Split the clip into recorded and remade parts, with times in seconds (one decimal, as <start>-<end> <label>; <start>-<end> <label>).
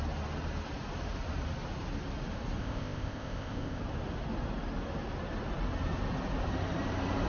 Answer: 0.0-2.6 recorded; 2.6-3.8 remade; 3.8-7.3 recorded